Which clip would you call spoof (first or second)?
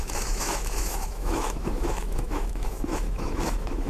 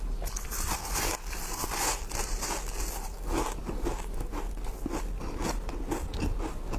first